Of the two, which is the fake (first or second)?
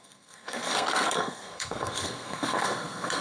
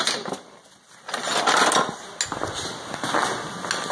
first